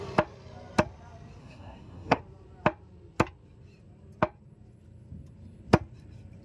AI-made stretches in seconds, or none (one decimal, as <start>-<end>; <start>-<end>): 1.4-2.2